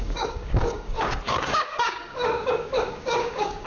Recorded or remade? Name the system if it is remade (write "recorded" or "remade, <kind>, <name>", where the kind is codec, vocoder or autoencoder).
remade, codec, DAC